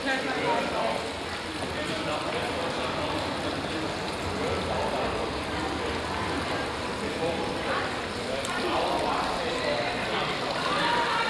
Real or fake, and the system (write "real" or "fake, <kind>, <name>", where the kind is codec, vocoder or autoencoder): real